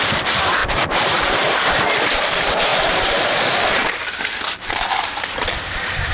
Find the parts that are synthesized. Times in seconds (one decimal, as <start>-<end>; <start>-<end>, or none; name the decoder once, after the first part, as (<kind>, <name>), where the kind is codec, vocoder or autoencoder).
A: 0.0-6.1 (vocoder, BigVGAN v2)